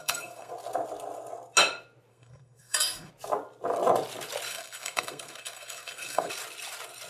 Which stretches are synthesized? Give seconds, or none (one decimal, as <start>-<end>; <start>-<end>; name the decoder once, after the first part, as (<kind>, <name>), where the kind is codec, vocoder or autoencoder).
0.0-0.5 (codec, SNAC); 2.1-3.1; 4.5-6.3